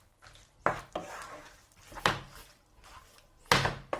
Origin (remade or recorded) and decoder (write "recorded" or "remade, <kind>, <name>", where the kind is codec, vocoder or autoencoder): recorded